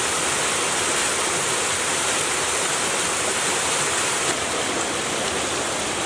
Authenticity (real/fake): real